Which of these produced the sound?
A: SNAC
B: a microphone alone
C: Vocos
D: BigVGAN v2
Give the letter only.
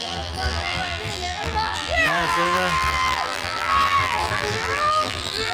D